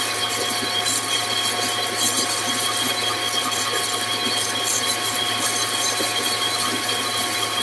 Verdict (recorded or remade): recorded